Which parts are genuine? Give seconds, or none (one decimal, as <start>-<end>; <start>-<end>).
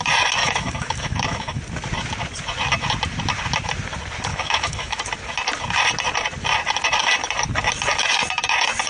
0.0-0.4; 1.6-4.3; 5.0-8.9